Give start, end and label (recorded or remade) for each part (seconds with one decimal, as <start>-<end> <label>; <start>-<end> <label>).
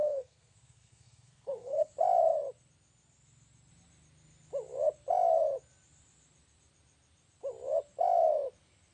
0.0-1.9 remade; 1.9-8.9 recorded